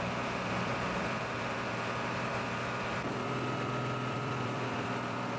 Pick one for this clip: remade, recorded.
remade